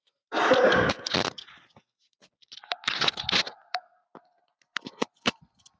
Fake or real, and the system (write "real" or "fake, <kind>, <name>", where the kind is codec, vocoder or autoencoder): real